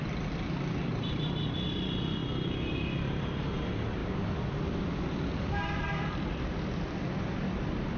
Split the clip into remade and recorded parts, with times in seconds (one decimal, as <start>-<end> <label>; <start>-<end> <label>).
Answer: 0.0-8.0 recorded